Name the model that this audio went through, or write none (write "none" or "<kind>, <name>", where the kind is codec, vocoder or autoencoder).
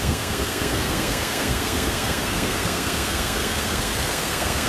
codec, SNAC